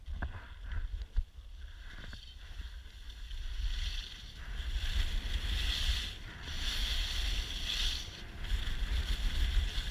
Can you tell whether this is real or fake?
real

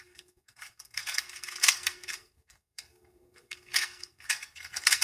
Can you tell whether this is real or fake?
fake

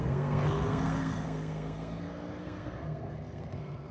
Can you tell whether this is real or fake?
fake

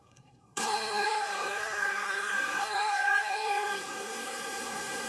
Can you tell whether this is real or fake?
fake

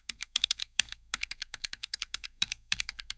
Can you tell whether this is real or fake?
fake